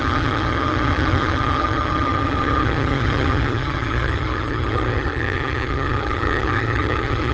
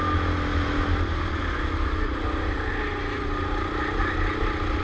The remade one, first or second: first